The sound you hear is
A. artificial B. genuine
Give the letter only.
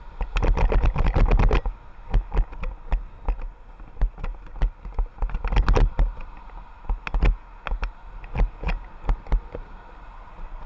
B